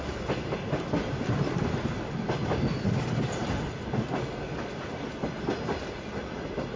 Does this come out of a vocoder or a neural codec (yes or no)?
no